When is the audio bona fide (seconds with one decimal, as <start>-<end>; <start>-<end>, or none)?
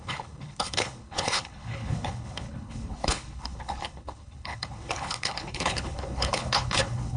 none